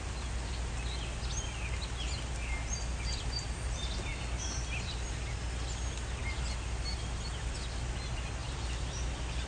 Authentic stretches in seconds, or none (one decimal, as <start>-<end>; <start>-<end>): 0.0-9.5

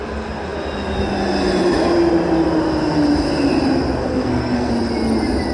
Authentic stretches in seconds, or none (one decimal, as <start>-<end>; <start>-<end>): 0.0-4.0; 4.7-5.5